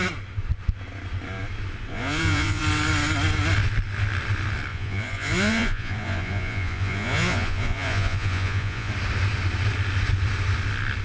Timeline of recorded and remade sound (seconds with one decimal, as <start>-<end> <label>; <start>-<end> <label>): 0.0-1.9 recorded; 1.9-2.6 remade; 2.6-4.7 recorded; 4.7-8.9 remade; 8.9-11.0 recorded